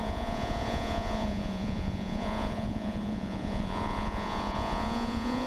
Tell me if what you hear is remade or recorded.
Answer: remade